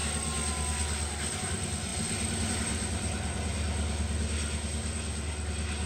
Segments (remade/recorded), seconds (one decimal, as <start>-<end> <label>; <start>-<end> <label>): 0.0-5.9 recorded